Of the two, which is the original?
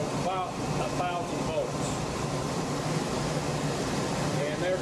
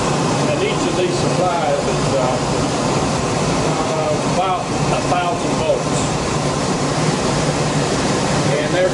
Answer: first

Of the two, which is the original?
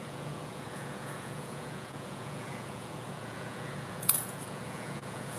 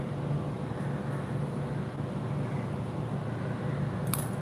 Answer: second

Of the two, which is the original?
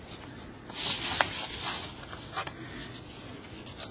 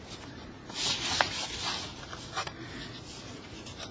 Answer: first